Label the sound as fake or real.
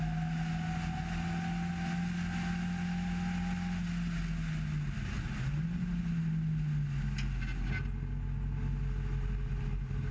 real